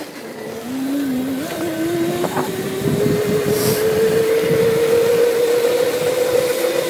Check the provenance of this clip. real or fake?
real